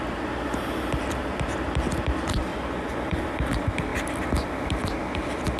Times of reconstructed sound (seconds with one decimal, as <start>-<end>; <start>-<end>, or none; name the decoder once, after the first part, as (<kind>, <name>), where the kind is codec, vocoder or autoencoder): 2.5-3.2 (vocoder, Vocos)